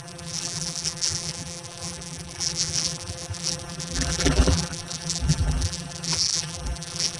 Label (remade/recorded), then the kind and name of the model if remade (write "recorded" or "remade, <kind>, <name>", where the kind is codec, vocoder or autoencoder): remade, vocoder, BigVGAN v2